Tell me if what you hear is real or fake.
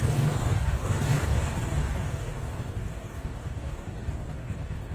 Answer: fake